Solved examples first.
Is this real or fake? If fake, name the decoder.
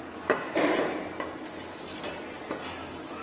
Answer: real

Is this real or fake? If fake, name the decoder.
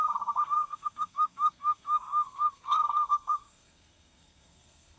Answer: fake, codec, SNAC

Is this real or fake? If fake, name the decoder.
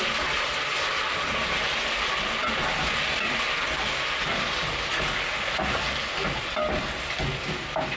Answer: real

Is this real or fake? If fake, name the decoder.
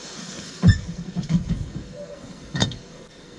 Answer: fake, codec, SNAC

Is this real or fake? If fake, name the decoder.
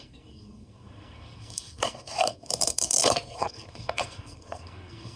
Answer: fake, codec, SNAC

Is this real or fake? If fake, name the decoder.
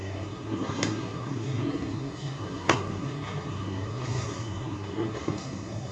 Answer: fake, codec, SNAC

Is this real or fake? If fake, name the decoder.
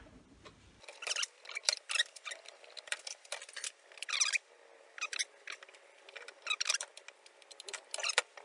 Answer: real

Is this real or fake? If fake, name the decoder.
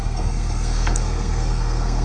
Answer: fake, codec, SNAC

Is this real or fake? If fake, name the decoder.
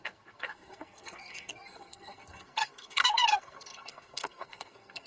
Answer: fake, codec, SNAC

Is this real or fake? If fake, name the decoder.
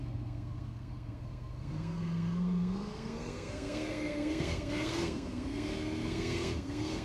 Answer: fake, codec, SNAC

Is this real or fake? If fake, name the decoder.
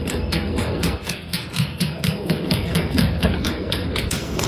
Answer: fake, codec, SNAC